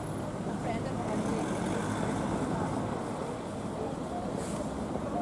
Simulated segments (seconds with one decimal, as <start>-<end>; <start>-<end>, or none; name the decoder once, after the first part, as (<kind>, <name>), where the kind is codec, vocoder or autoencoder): none